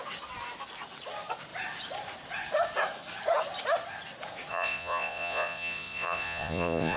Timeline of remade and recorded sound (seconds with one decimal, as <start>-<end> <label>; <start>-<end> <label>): 0.0-4.5 recorded; 4.5-7.0 remade